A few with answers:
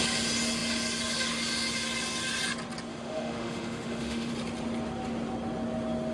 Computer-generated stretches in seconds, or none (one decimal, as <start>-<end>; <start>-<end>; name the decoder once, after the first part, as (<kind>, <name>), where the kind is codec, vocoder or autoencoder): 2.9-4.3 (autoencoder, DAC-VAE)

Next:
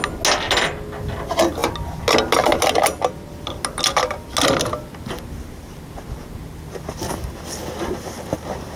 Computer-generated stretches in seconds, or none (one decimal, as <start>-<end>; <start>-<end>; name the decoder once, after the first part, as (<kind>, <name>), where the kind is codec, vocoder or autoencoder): none

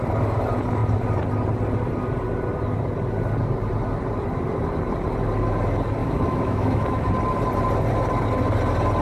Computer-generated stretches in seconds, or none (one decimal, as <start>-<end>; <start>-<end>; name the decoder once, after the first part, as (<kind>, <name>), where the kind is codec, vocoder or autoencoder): 6.0-7.1 (autoencoder, DAC-VAE)